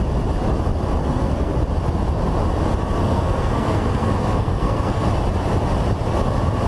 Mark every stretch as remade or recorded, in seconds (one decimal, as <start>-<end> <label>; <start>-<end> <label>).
0.0-1.0 recorded; 1.0-1.5 remade; 1.5-3.0 recorded; 3.0-5.1 remade; 5.1-6.7 recorded